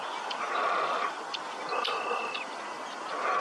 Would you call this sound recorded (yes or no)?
yes